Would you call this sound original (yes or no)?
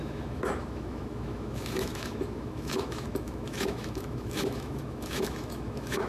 no